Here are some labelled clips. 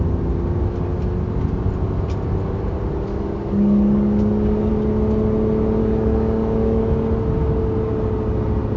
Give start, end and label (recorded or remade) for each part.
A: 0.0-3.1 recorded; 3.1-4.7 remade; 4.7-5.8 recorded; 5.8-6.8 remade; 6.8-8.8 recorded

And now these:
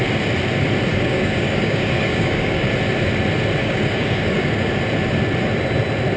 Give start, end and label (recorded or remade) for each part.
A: 0.0-0.9 recorded; 0.9-2.7 remade; 2.7-3.6 recorded; 3.6-4.7 remade; 4.7-6.2 recorded